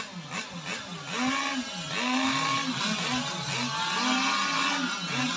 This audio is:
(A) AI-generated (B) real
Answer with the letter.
B